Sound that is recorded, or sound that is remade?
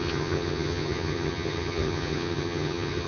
remade